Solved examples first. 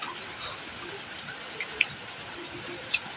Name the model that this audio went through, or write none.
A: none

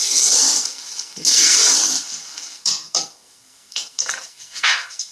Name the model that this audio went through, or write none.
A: codec, SNAC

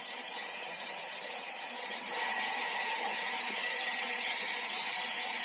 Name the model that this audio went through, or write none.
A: vocoder, HiFi-GAN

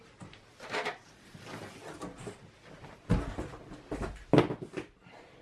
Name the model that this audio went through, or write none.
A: none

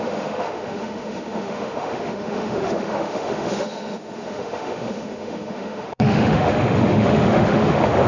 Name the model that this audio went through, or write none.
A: autoencoder, DAC-VAE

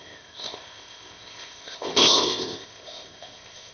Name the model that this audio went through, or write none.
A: codec, ZipCodec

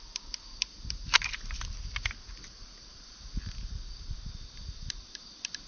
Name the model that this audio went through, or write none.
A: none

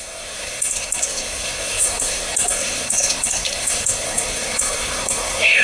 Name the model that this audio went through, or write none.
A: codec, SNAC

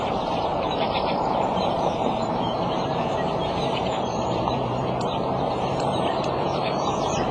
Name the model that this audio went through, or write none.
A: vocoder, BigVGAN v2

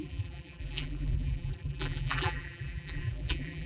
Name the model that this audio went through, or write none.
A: vocoder, BigVGAN v2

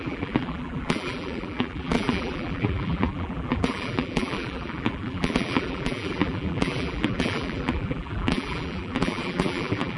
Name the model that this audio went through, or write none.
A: vocoder, BigVGAN v2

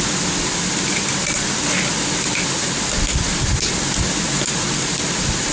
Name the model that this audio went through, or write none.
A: none